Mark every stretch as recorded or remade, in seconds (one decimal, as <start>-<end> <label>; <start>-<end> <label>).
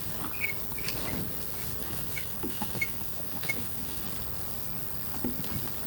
0.0-1.8 recorded; 1.8-4.0 remade; 4.0-5.9 recorded